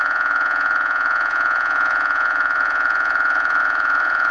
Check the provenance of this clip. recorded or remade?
remade